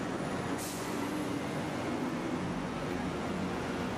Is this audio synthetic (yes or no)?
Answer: yes